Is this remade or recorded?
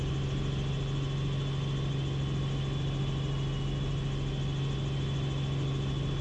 recorded